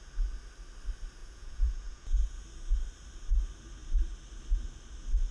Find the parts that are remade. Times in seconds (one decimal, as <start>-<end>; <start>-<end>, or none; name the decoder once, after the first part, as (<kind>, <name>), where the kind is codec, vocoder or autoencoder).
1.2-2.4 (vocoder, Vocos)